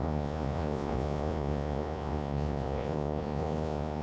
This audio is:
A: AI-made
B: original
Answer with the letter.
A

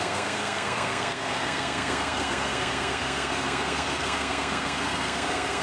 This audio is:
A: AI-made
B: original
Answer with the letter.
A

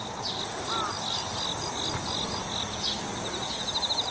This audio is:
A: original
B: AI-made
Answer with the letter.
A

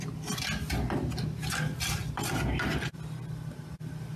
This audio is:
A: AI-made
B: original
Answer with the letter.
B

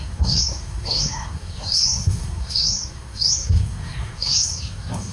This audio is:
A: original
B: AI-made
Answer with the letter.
B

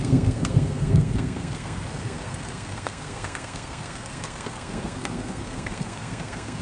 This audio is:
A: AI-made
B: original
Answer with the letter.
A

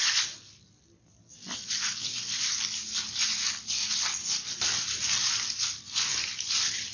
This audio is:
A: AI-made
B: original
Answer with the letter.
B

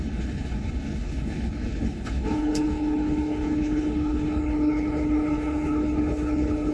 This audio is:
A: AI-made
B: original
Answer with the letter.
A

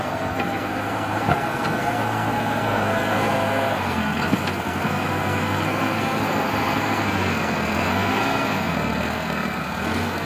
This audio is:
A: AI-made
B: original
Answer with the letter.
A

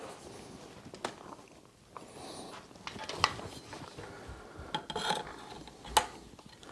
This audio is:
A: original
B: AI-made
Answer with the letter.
A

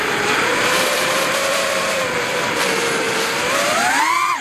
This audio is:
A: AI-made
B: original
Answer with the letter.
A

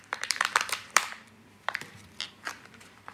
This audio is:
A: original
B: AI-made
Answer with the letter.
B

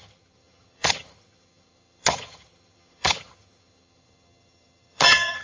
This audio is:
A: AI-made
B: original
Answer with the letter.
A